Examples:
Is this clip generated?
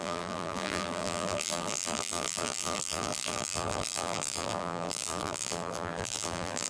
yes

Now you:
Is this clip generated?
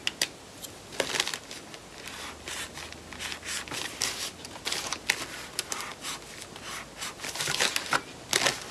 no